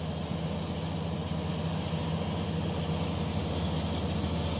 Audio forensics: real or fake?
real